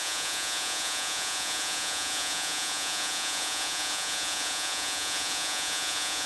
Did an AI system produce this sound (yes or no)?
yes